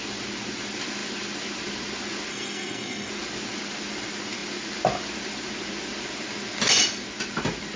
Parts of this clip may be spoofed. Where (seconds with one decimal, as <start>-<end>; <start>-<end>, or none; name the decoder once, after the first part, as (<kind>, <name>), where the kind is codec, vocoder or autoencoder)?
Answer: 2.3-3.1 (codec, SNAC)